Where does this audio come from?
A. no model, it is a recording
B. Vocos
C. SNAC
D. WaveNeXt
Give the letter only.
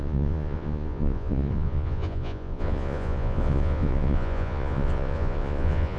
B